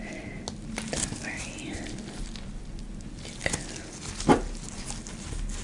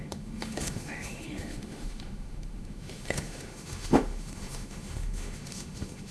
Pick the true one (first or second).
first